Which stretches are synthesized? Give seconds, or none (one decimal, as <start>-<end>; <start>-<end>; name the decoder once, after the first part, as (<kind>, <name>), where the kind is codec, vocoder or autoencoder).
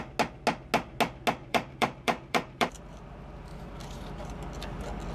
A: 1.4-4.4 (vocoder, BigVGAN v2)